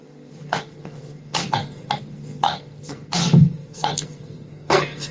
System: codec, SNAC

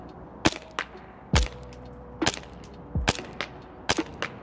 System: none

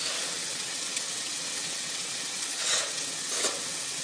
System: vocoder, WaveNeXt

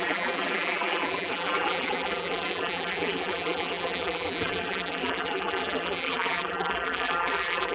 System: vocoder, BigVGAN v2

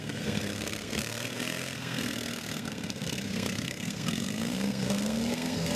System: codec, SNAC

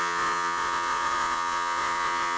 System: vocoder, Vocos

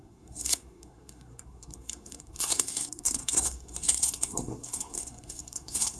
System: codec, SNAC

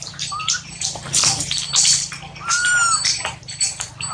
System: none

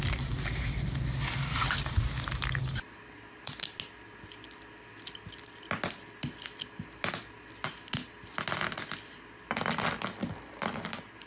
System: none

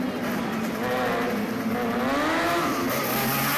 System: none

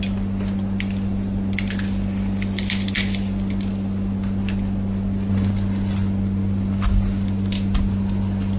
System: none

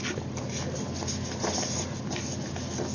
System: none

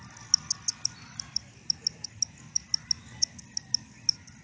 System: none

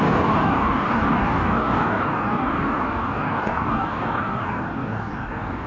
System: codec, DAC